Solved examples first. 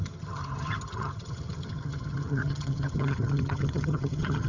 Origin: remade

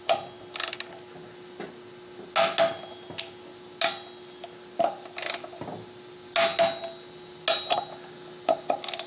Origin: recorded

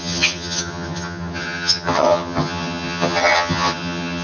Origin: remade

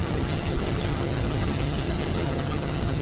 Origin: remade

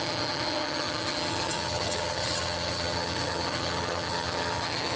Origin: remade